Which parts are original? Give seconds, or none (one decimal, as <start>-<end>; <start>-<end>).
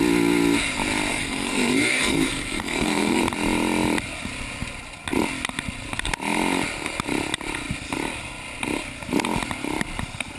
0.0-1.1; 3.2-10.4